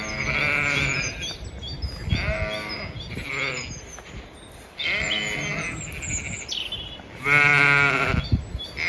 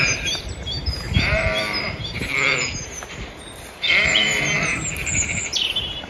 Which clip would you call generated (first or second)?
second